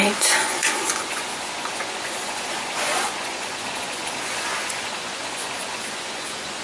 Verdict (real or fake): fake